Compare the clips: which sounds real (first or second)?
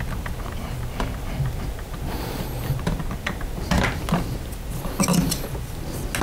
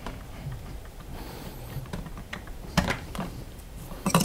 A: first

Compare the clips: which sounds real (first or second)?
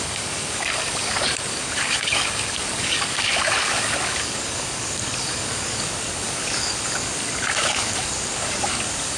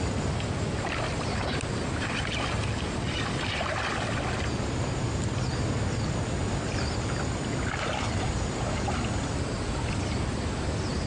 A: second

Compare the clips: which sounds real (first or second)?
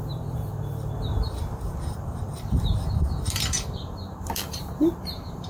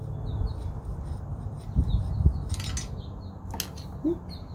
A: second